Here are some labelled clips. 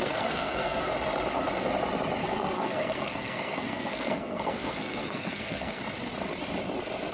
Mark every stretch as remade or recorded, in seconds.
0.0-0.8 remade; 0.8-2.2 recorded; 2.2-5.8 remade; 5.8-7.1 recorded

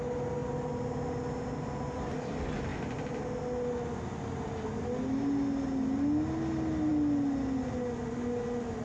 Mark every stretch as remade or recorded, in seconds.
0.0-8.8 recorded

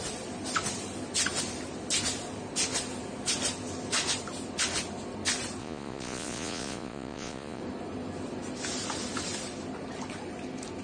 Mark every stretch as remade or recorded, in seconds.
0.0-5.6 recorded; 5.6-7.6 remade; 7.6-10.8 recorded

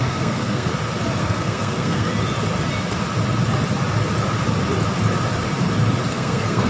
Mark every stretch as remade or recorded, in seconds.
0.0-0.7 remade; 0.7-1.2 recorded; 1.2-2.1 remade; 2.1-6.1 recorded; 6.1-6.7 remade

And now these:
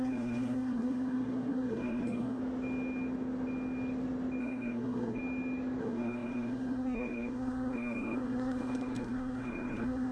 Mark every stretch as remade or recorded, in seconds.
0.0-2.4 remade; 2.4-4.4 recorded; 4.4-5.2 remade; 5.2-5.8 recorded; 5.8-10.1 remade

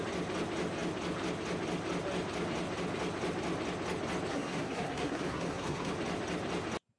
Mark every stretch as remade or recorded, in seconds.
0.0-4.3 recorded; 4.3-5.9 remade; 5.9-7.0 recorded